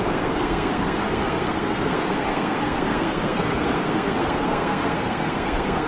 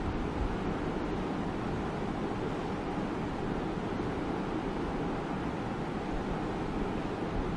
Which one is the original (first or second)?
second